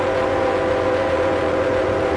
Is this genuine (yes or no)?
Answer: no